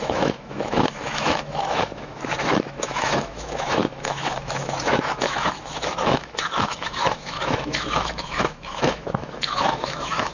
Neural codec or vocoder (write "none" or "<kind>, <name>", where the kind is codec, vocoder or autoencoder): autoencoder, DAC-VAE